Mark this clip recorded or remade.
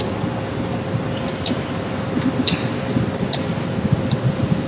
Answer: recorded